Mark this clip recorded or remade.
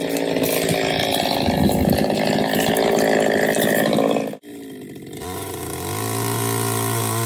recorded